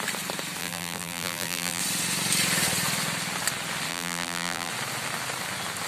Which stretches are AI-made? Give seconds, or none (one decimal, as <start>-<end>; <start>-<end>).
0.6-1.8; 3.9-4.7